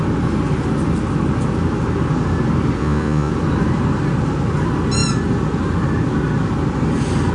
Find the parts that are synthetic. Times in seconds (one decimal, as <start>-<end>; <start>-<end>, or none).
2.8-3.3